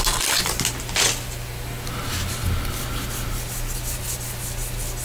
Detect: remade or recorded recorded